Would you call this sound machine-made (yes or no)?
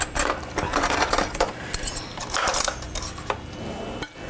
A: yes